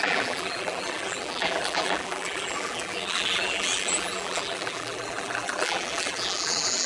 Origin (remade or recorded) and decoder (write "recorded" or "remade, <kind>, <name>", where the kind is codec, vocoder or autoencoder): remade, vocoder, BigVGAN v2